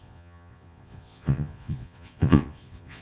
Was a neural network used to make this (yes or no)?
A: yes